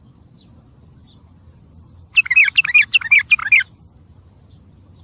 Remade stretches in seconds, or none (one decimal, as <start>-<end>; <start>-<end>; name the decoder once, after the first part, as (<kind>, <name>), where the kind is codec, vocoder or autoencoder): none